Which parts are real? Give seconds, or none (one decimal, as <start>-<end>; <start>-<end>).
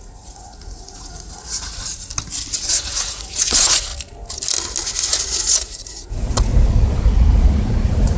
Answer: 2.1-2.7; 3.9-5.4; 6.5-7.5